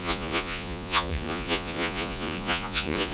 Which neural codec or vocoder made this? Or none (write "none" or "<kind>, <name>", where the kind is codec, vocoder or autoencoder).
vocoder, Vocos